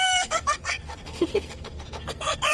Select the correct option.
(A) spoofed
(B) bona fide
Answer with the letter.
A